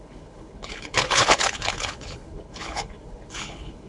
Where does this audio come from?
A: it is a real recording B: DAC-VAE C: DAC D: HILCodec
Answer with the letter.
D